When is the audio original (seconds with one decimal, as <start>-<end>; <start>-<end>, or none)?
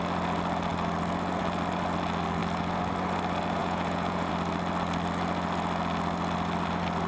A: 0.0-3.6; 4.3-7.1